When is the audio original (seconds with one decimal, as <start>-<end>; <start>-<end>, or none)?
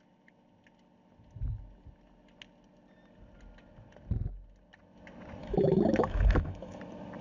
0.0-5.4; 6.8-7.2